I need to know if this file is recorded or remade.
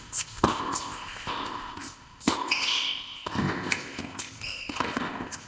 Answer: remade